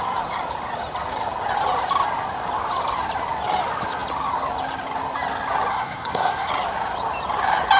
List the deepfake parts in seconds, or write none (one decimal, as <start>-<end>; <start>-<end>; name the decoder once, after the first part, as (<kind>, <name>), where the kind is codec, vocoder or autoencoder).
5.7-6.5 (codec, SNAC)